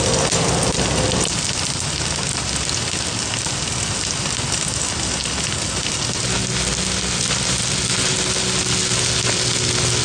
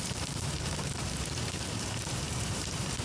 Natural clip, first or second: first